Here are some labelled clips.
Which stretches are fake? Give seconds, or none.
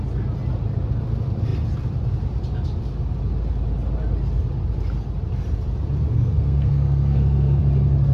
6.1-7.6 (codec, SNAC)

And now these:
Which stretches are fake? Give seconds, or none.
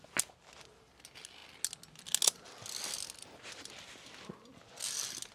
none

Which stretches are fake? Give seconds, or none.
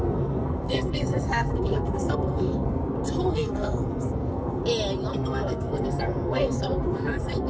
0.0-2.8 (codec, SNAC); 3.3-4.6; 5.1-7.5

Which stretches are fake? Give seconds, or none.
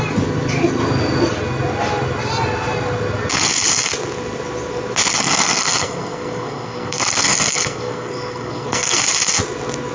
5.2-9.0 (codec, SNAC)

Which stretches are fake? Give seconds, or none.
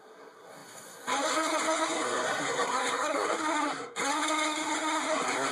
0.0-5.5 (codec, SNAC)